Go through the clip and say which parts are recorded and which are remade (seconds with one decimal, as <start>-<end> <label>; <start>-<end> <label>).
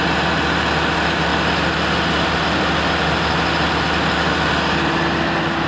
0.0-5.7 recorded